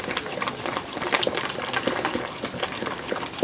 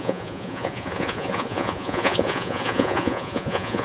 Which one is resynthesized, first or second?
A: second